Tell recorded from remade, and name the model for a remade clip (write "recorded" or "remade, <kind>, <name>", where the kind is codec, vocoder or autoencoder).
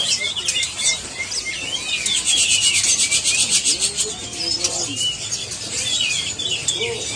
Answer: recorded